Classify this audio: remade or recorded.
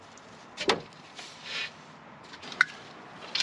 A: remade